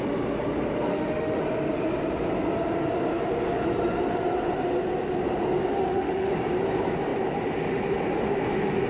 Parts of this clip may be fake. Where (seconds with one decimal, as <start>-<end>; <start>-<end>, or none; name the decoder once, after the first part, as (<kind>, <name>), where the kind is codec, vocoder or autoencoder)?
0.9-1.4 (autoencoder, DAC-VAE); 5.7-6.3